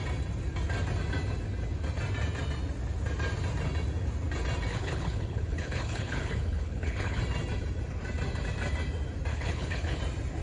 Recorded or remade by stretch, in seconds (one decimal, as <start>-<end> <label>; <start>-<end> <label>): 0.0-4.7 recorded; 4.7-7.2 remade; 7.2-9.3 recorded; 9.3-10.0 remade; 10.0-10.4 recorded